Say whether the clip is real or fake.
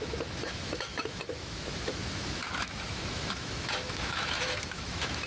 fake